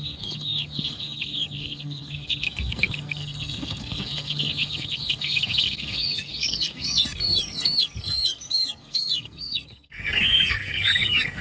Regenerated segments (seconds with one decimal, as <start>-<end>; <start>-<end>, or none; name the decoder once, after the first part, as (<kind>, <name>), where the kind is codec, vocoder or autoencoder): 0.0-11.4 (codec, SNAC)